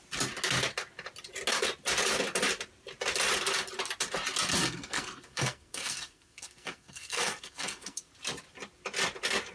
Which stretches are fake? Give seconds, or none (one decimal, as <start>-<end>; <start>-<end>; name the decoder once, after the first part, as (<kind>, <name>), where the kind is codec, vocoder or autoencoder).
4.6-8.1 (codec, SNAC)